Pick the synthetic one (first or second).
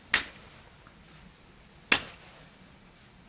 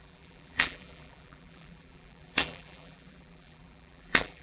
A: second